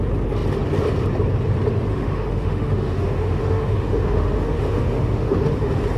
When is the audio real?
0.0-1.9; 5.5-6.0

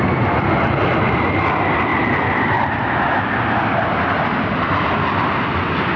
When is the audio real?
0.0-6.0